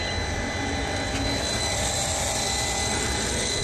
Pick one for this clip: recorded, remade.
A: recorded